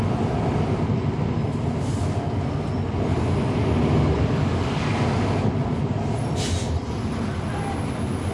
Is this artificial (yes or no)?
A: no